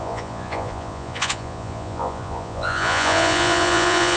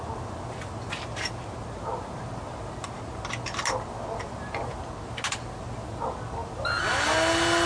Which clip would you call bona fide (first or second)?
second